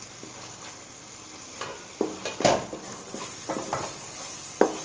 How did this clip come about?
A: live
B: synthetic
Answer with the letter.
A